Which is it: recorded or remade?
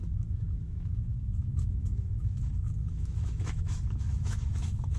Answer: remade